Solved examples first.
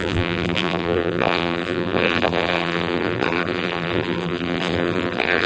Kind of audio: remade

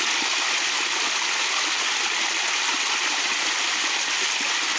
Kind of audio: recorded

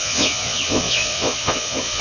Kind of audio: remade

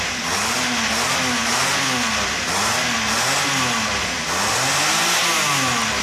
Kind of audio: recorded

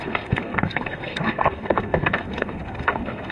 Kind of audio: remade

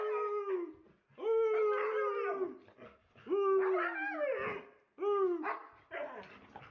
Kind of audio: recorded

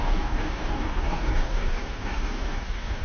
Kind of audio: remade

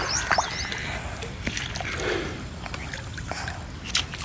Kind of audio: recorded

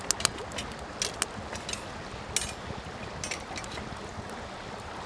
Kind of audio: recorded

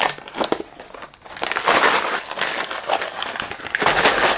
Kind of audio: recorded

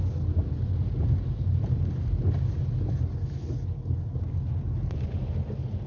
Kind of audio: recorded